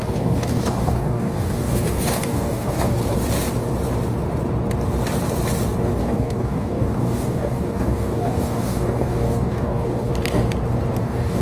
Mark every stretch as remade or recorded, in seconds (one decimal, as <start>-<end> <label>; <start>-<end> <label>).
0.0-3.0 remade; 3.0-6.0 recorded; 6.0-10.1 remade; 10.1-11.0 recorded; 11.0-11.4 remade